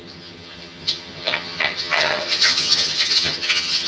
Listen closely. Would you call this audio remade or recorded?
remade